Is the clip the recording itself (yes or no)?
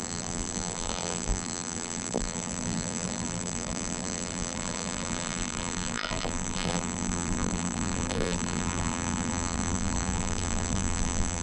no